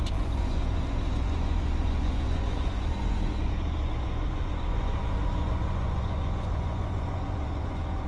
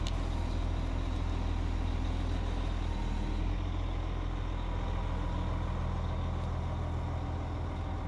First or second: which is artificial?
first